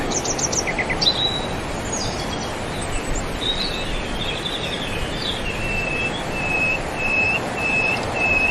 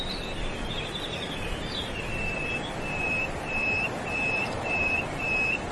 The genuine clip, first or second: second